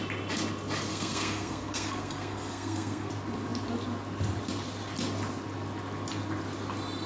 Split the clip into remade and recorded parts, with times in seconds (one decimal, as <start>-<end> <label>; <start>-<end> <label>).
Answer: 0.0-0.9 recorded; 0.9-3.1 remade; 3.1-7.1 recorded